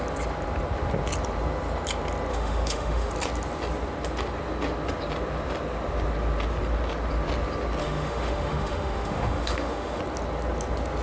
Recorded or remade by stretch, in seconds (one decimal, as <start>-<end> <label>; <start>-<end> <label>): 0.0-2.3 recorded; 2.3-3.1 remade; 3.1-7.8 recorded; 7.8-10.0 remade; 10.0-11.0 recorded